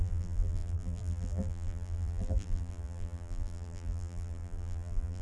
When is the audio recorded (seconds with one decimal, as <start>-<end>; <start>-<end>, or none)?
none